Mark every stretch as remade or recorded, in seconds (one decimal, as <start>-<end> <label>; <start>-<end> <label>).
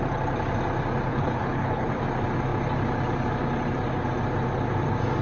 0.0-1.1 recorded; 1.1-2.0 remade; 2.0-5.2 recorded